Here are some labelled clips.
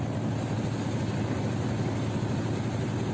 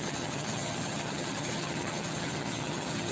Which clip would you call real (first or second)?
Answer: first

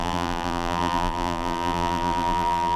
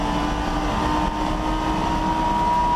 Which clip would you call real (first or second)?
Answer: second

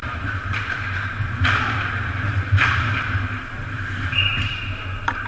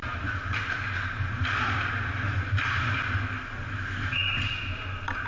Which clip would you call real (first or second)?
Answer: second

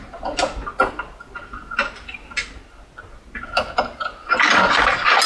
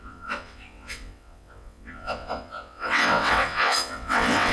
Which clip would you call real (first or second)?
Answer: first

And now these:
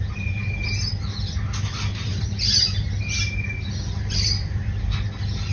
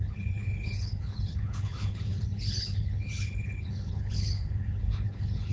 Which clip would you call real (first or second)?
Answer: first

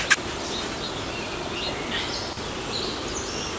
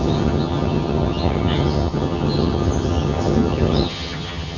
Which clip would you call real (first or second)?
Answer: first